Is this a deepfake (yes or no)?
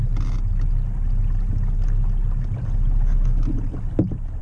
no